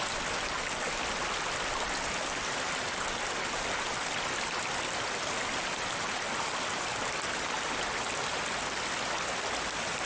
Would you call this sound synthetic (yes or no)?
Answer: no